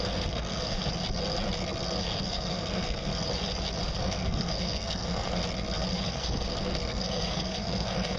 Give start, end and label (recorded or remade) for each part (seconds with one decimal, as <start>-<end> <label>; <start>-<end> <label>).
0.0-0.8 remade; 0.8-2.0 recorded; 2.0-3.1 remade; 3.1-3.8 recorded; 3.8-5.4 remade; 5.4-6.1 recorded; 6.1-8.2 remade